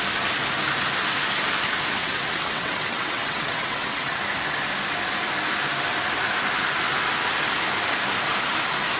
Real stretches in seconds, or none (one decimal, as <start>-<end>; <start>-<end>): 0.0-2.0; 4.2-9.0